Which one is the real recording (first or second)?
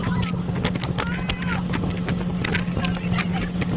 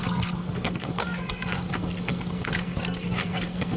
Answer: first